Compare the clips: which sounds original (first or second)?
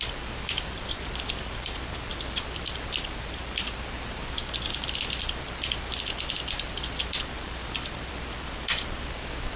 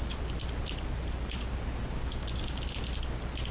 second